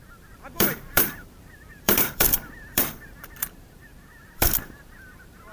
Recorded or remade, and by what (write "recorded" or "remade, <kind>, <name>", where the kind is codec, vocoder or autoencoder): remade, vocoder, BigVGAN v2